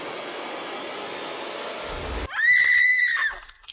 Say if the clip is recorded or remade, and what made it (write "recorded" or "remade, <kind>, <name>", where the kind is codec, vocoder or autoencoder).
recorded